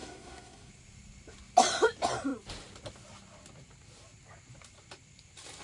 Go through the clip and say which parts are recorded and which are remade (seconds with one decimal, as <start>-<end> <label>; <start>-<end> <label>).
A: 0.0-0.7 remade; 0.7-5.6 recorded